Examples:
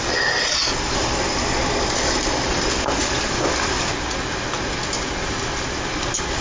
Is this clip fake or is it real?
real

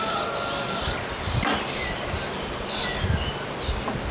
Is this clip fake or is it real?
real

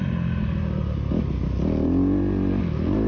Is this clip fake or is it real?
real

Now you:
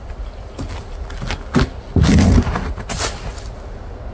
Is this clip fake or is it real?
real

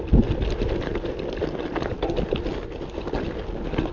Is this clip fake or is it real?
real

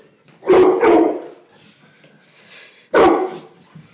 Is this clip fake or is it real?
real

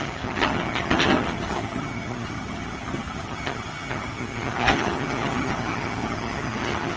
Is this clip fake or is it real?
fake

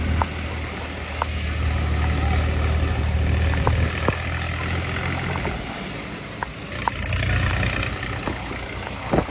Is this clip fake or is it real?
real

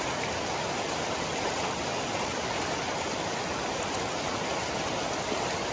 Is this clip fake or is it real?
real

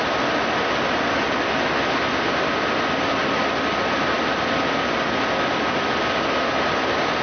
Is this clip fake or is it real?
real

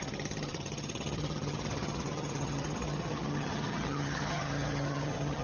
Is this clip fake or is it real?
fake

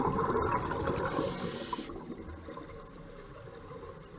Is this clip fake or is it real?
real